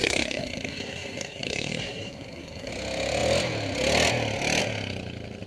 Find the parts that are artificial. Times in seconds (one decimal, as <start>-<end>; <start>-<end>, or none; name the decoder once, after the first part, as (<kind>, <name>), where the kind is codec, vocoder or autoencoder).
0.0-2.7 (codec, SNAC)